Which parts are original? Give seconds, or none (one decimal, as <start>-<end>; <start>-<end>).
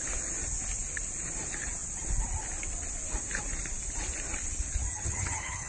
0.0-4.9